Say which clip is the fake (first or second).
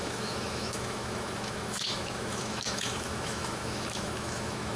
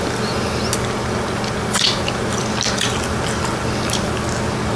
first